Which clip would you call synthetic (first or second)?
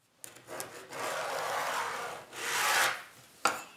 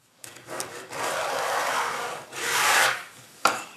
second